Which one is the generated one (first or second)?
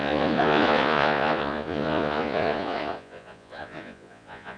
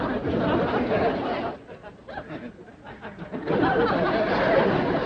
first